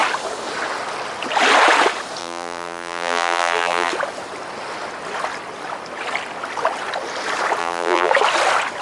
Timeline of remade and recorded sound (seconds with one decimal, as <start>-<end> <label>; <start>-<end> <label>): 0.0-2.2 recorded; 2.2-3.9 remade; 3.9-7.6 recorded; 7.6-8.1 remade; 8.1-8.8 recorded